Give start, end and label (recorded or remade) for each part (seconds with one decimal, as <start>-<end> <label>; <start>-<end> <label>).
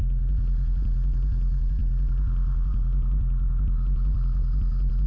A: 0.0-5.1 recorded